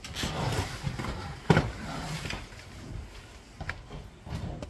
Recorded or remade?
recorded